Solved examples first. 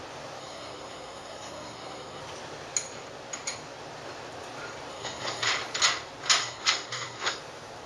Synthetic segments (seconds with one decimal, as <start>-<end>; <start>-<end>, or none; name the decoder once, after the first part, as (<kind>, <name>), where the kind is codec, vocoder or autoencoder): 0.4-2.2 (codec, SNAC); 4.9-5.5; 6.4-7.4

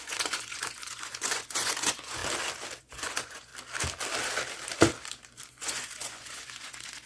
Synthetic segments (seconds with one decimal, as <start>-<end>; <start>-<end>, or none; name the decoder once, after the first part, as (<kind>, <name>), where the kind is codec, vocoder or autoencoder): 0.0-2.2 (vocoder, Vocos); 2.8-3.5; 5.5-7.1

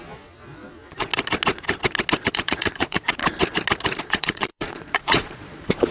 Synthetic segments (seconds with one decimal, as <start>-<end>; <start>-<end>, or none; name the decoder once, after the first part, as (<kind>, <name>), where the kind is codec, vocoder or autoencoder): 0.0-1.1 (vocoder, Vocos); 2.3-3.2; 4.0-5.9

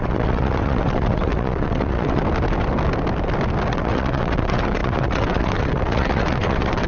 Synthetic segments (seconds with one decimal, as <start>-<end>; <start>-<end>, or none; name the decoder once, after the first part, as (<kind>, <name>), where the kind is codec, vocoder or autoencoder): 0.0-2.2 (vocoder, WaveNeXt); 3.7-6.9

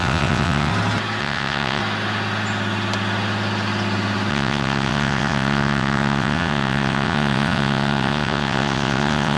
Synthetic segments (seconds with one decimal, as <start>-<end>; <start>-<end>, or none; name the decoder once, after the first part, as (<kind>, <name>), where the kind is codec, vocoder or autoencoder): 0.0-0.7 (vocoder, WaveNeXt); 1.2-1.8; 4.3-9.4

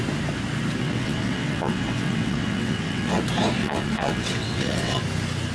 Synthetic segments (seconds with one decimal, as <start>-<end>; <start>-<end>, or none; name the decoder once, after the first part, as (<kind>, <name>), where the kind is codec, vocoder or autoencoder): 0.8-3.2 (vocoder, WaveNeXt); 3.6-5.0